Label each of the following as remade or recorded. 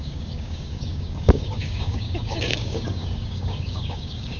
remade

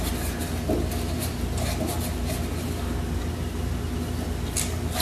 recorded